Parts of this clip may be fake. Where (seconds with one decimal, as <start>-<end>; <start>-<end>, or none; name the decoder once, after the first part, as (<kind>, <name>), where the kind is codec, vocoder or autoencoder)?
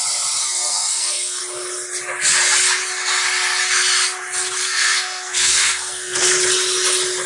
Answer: 0.4-1.4 (codec, SNAC); 4.6-6.3